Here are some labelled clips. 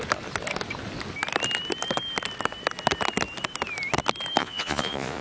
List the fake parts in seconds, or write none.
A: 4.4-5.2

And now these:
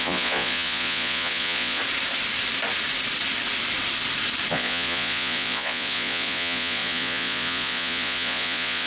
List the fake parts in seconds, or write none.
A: 0.0-1.8; 4.5-8.9

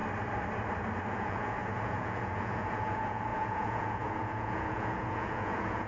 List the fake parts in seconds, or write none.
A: 1.1-5.9

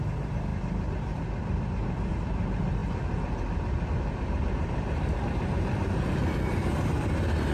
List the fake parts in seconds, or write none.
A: none